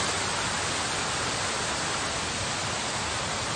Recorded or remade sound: recorded